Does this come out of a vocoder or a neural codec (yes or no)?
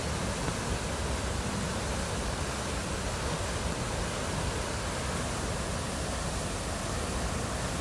no